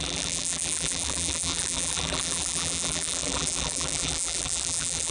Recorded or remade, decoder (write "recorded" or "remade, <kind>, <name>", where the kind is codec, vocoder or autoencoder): remade, vocoder, BigVGAN v2